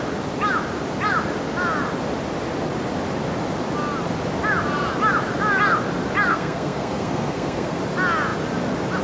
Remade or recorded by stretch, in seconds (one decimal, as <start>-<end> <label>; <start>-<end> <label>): 0.0-6.3 recorded; 6.3-7.8 remade; 7.8-9.0 recorded